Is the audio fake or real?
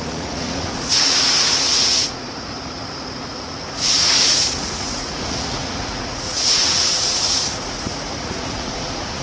fake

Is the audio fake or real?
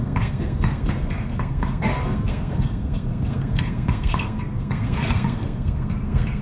fake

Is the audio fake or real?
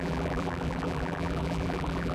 fake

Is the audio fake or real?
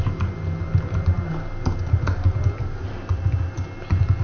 real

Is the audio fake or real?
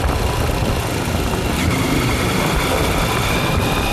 real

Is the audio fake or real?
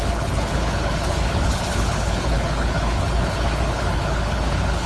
fake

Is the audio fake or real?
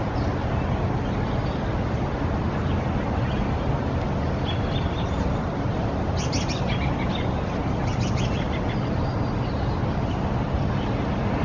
real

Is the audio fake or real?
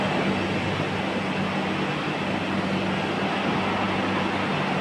real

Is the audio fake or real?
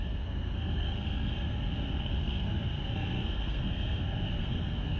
fake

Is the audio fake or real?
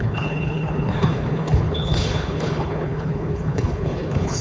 fake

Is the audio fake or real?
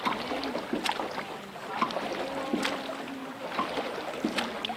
real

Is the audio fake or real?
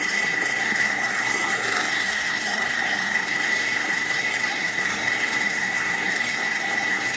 fake